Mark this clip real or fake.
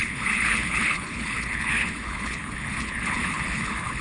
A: fake